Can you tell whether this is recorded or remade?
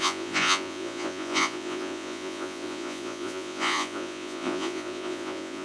remade